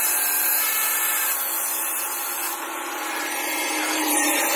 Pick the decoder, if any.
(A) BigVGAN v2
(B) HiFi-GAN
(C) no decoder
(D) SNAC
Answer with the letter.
A